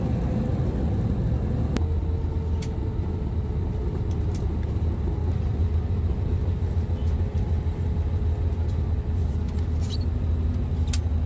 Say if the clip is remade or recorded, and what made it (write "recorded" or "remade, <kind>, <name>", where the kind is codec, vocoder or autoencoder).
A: recorded